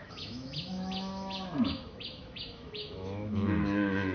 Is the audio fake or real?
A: fake